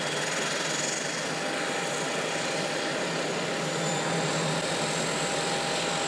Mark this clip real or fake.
real